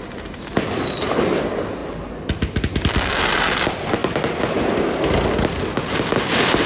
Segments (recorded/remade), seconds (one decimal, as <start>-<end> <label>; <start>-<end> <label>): 0.0-6.7 recorded